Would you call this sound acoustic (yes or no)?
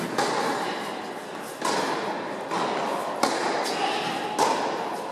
yes